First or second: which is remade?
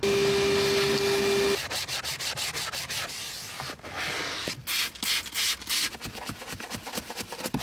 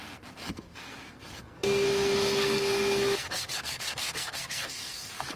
second